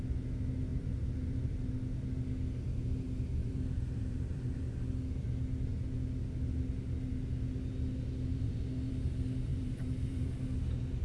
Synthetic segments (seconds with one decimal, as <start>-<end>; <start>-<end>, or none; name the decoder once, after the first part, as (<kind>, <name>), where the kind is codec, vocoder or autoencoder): 0.7-1.7 (vocoder, BigVGAN v2); 3.4-4.6; 8.3-8.9; 9.5-10.3